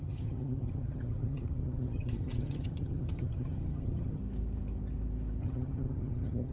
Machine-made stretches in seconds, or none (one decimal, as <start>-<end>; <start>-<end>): 0.0-4.2; 5.4-6.5